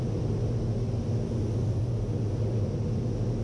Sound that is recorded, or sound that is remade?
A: recorded